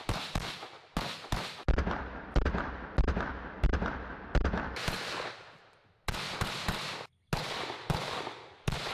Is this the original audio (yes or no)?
yes